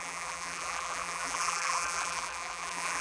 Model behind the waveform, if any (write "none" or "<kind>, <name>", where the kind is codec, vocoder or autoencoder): vocoder, BigVGAN v2